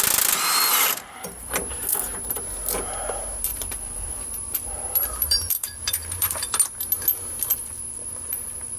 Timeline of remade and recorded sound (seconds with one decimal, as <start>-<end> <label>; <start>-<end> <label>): 0.0-0.7 recorded; 0.7-1.5 remade; 1.5-3.5 recorded; 3.5-6.5 remade; 6.5-7.5 recorded; 7.5-8.8 remade